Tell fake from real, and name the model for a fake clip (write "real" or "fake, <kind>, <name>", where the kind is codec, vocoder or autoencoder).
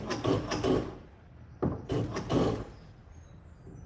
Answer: real